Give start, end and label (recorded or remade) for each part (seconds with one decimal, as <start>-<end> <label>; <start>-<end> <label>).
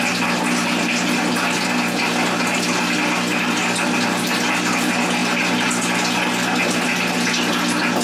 0.0-8.0 recorded